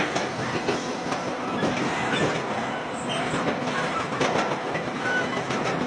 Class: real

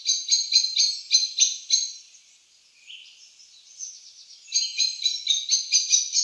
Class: real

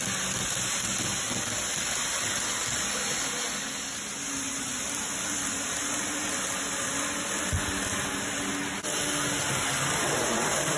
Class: real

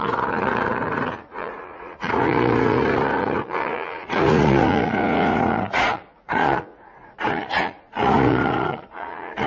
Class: fake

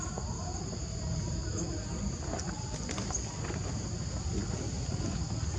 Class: real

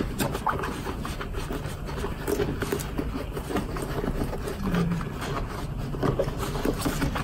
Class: real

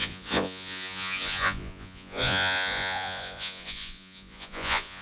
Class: fake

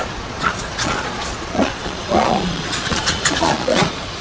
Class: fake